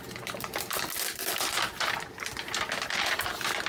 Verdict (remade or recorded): recorded